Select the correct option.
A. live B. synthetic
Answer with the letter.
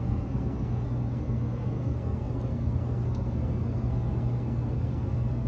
B